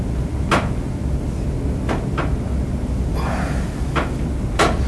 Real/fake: real